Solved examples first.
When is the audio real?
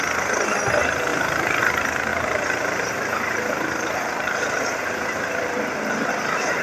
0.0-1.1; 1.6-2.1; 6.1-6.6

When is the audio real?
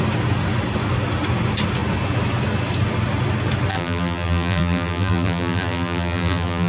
0.0-3.7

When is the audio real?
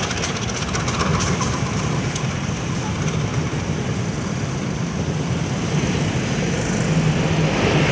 0.0-1.1; 5.3-7.9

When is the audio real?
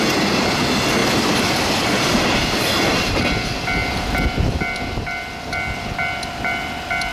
0.0-1.0; 3.1-7.1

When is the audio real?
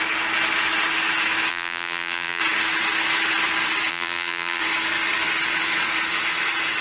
0.0-1.5; 2.4-3.9; 4.6-6.8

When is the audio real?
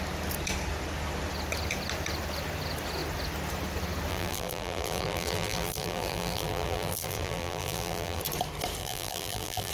0.0-4.1; 8.2-8.8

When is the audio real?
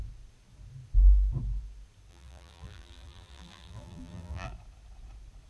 0.0-2.1; 4.5-5.5